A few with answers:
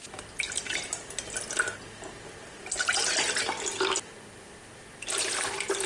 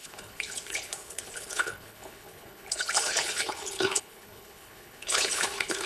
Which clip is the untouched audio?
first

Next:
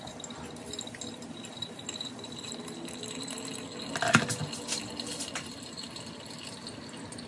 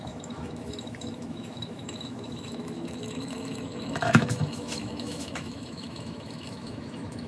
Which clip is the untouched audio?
first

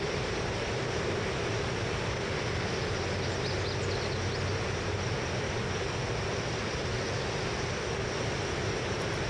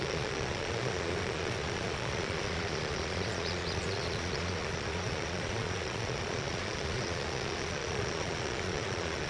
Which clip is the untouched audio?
first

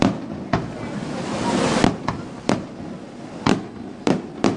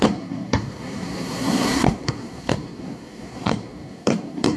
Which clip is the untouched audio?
first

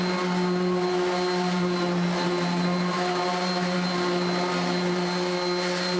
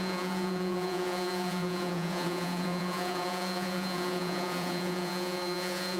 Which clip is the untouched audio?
first